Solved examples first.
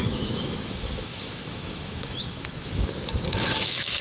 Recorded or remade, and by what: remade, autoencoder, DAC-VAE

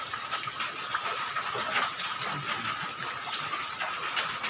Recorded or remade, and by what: recorded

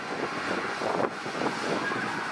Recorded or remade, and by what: remade, vocoder, Vocos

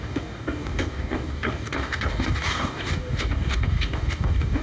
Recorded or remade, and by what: remade, codec, DAC